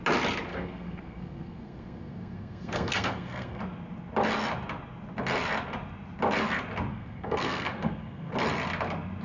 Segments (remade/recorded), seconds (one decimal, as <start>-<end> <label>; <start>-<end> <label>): 0.0-0.5 recorded; 0.5-3.6 remade; 3.6-6.9 recorded; 6.9-8.3 remade; 8.3-9.2 recorded